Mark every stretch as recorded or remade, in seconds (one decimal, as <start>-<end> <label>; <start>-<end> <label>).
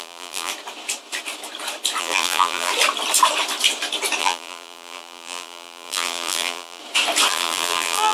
0.0-0.5 remade; 0.5-2.0 recorded; 2.0-2.7 remade; 2.7-4.2 recorded; 4.2-6.8 remade; 6.8-7.3 recorded; 7.3-8.1 remade